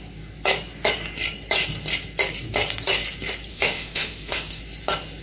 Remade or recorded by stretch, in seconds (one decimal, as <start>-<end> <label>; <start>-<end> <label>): 0.0-3.5 recorded; 3.5-4.6 remade; 4.6-5.2 recorded